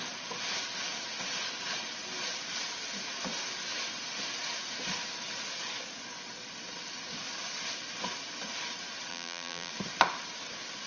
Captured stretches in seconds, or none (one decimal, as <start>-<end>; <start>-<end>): 0.0-9.1; 9.7-10.9